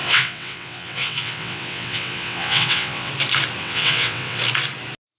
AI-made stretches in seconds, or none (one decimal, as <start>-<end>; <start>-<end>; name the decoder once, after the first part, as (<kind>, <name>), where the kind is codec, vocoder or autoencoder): 0.0-3.1 (vocoder, WaveNeXt); 3.6-4.4